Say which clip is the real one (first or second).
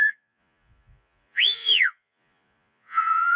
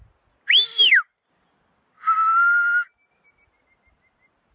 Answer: second